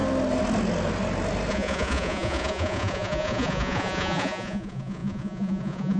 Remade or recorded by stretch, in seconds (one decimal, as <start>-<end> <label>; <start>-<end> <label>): 0.0-1.5 recorded; 1.5-6.0 remade